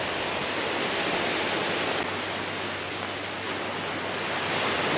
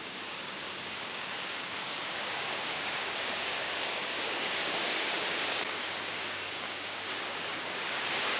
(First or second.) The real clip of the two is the first